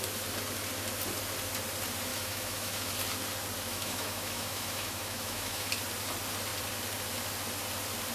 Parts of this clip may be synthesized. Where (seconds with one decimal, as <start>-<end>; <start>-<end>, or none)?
2.1-2.9; 3.7-5.7